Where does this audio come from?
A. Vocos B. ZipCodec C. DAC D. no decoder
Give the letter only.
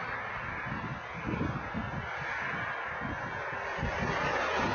D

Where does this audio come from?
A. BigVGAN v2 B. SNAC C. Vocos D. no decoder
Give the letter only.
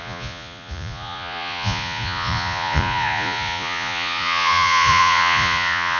C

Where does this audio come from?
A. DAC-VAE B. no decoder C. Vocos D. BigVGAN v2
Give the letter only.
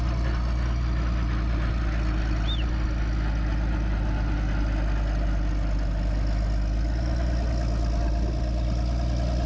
B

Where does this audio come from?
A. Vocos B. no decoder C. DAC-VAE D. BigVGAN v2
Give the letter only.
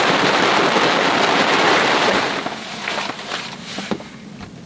B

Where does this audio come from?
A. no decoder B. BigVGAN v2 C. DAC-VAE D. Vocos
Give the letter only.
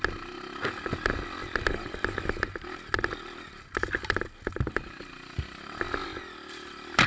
A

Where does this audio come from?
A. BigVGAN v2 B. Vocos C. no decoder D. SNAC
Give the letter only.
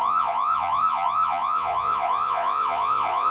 B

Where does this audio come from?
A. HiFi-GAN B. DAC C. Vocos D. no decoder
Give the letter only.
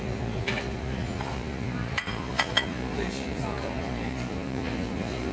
C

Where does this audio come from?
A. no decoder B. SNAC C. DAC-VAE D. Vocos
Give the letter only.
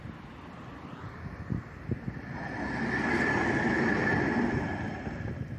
A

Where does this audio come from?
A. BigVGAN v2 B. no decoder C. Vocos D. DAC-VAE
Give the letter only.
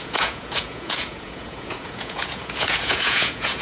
C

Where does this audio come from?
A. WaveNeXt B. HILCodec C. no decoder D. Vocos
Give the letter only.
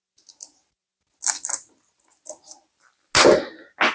C